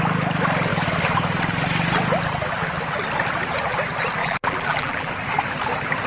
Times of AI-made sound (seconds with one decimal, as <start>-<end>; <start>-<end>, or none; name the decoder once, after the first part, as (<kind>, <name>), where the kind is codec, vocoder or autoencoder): 4.2-5.1 (vocoder, BigVGAN v2)